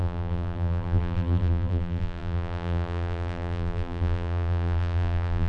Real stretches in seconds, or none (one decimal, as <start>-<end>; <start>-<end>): none